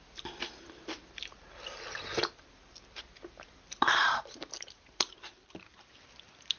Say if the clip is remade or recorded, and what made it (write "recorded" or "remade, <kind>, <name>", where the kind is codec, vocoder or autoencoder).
recorded